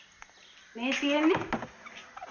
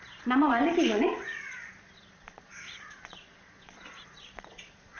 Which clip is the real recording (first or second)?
first